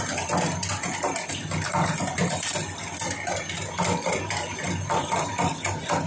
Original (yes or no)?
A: yes